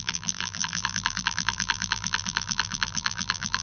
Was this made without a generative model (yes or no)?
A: no